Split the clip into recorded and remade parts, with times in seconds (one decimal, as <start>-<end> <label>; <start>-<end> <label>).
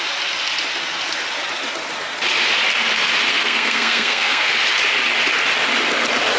0.0-3.3 recorded; 3.3-4.5 remade; 4.5-6.4 recorded